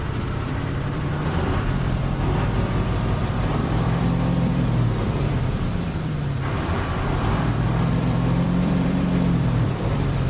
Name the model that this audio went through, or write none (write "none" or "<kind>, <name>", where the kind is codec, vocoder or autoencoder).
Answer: vocoder, BigVGAN v2